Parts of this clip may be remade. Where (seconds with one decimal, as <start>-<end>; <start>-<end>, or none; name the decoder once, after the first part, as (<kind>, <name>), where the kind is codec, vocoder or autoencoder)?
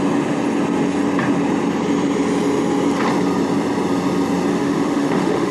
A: 4.5-5.5 (autoencoder, DAC-VAE)